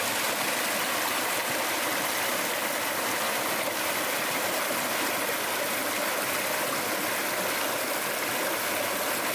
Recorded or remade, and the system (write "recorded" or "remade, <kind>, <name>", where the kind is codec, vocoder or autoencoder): recorded